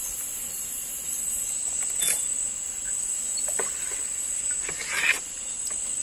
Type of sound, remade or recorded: recorded